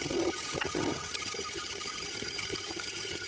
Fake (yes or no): yes